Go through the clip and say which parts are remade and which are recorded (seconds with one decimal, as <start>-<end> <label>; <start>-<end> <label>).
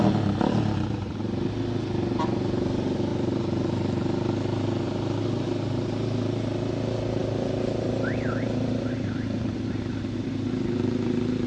0.0-11.5 recorded